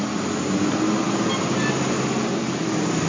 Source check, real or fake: real